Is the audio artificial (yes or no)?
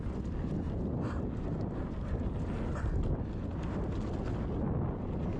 no